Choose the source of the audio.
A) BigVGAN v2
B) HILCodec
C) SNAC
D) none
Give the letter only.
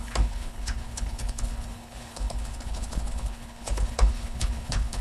B